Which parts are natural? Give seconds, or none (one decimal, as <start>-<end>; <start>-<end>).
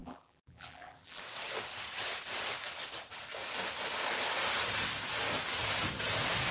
1.2-6.5